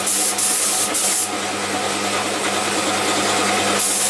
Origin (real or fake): real